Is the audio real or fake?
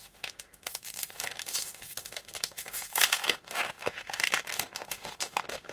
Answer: fake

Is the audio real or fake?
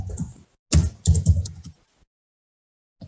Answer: real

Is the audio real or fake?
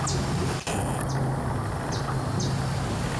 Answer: real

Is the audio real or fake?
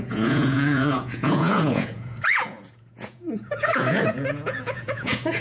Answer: fake